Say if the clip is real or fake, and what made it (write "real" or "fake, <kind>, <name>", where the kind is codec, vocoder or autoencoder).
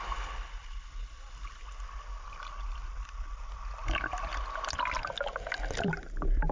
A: real